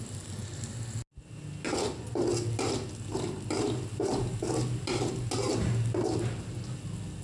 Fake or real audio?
real